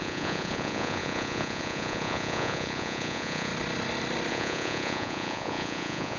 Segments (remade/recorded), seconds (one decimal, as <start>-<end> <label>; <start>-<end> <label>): 0.0-3.5 remade; 3.5-4.3 recorded; 4.3-6.2 remade